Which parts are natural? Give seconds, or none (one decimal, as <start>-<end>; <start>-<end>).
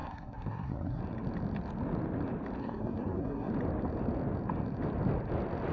1.0-2.6; 3.5-5.7